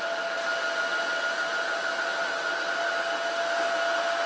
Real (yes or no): yes